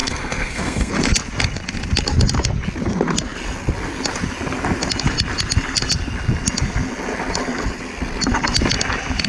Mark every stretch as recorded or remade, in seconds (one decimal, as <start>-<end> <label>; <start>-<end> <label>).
0.0-0.9 remade; 0.9-9.3 recorded